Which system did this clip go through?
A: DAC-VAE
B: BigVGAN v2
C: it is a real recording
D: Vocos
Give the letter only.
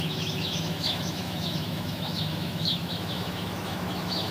A